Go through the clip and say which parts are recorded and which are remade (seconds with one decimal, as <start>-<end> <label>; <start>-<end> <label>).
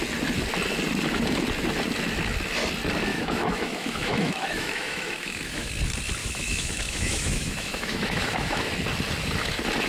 0.0-3.1 recorded; 3.1-5.7 remade; 5.7-6.2 recorded; 6.2-8.7 remade; 8.7-9.9 recorded